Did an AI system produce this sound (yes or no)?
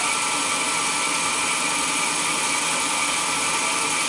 no